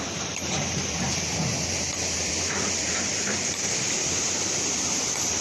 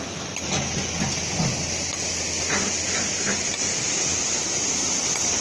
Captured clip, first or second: second